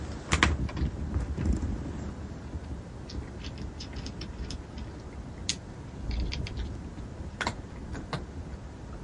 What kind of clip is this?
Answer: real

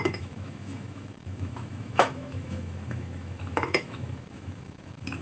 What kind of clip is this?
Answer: fake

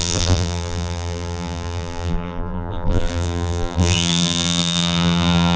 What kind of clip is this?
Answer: fake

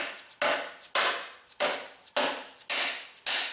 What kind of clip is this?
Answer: real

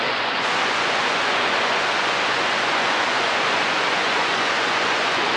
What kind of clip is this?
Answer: fake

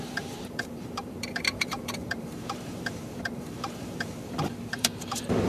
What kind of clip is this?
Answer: fake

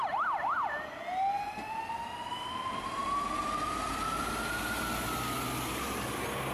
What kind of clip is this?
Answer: real